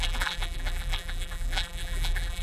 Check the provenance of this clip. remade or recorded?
remade